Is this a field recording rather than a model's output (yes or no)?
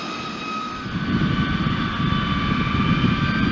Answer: yes